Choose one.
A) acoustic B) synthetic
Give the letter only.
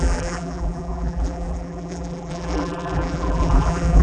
B